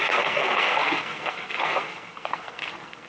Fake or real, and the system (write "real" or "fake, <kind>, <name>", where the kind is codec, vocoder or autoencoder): fake, codec, SNAC